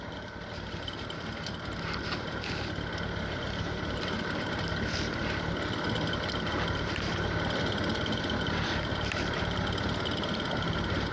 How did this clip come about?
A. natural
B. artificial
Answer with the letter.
A